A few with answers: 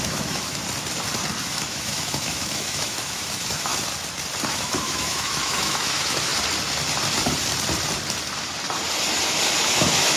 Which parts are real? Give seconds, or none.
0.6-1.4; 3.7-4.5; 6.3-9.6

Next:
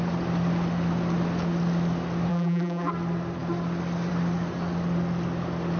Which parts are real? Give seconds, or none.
0.0-2.3; 2.9-5.8

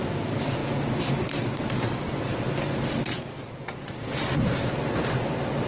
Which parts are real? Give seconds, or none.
0.0-5.7

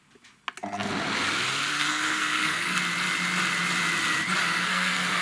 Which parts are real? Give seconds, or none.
0.0-1.7; 2.8-4.4

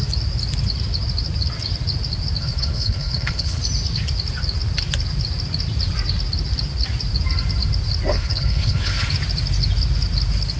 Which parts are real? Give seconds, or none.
0.0-2.4; 3.6-8.1; 9.1-10.6